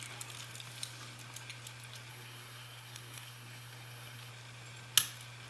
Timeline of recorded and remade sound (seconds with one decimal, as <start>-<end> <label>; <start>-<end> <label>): 0.0-2.1 recorded; 2.1-4.3 remade; 4.3-5.5 recorded